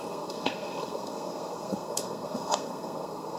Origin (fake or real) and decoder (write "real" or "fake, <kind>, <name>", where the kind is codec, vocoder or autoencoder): fake, codec, SNAC